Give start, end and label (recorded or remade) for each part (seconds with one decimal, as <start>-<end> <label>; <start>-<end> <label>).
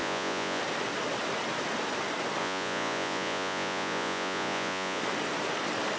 0.0-0.6 remade; 0.6-2.4 recorded; 2.4-5.0 remade; 5.0-6.0 recorded